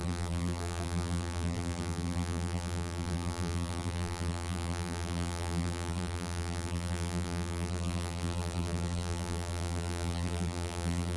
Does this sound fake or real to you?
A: fake